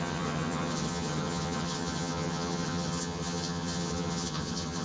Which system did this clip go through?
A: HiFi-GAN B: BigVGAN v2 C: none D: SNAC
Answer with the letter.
A